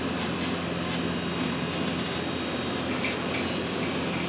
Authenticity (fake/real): real